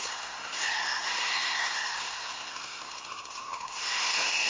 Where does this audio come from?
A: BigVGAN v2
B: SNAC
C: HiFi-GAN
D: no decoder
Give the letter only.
B